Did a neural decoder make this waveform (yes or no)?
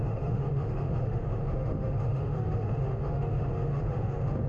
yes